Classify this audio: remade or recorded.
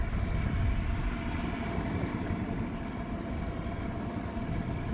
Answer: recorded